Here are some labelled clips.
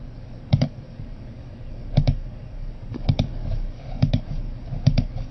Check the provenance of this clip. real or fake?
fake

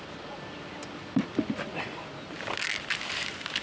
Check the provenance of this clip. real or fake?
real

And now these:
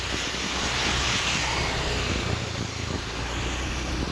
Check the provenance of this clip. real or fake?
real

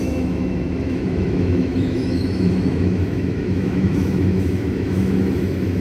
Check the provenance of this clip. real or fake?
fake